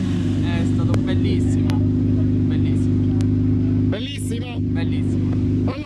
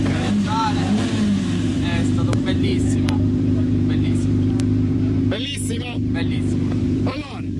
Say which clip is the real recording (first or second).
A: first